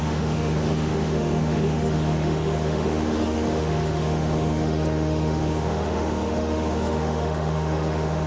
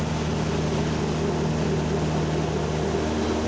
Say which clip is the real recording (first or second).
second